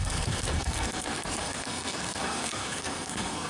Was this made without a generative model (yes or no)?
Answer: no